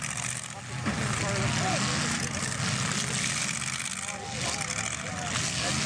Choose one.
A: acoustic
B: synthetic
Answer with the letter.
A